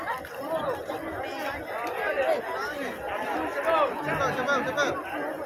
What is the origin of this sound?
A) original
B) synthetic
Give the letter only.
A